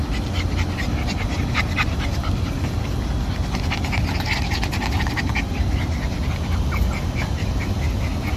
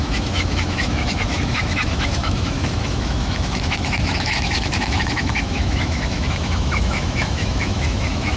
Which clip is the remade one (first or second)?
second